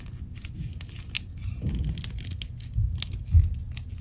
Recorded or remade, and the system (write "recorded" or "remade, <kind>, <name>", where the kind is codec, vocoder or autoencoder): recorded